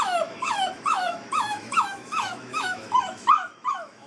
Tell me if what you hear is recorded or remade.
remade